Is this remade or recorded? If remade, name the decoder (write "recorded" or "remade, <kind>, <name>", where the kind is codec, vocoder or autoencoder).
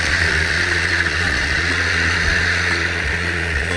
remade, vocoder, Vocos